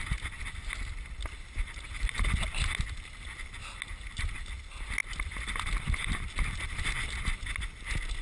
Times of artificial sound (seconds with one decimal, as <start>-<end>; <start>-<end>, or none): none